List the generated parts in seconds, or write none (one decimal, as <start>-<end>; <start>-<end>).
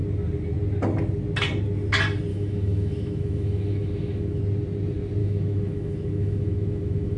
2.3-4.4; 5.2-7.2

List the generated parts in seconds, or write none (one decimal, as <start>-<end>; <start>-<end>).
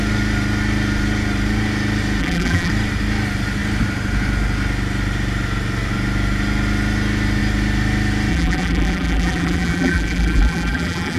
2.2-2.7; 8.3-11.2